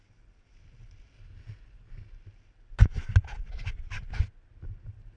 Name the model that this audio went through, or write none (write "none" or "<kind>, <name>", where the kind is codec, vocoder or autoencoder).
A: none